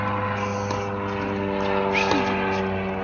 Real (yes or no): yes